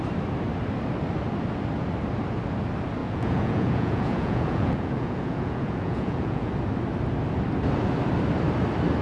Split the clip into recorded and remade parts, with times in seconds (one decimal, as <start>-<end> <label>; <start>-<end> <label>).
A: 0.0-3.0 recorded; 3.0-6.5 remade; 6.5-9.0 recorded